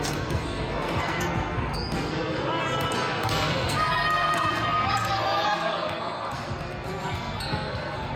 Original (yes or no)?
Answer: no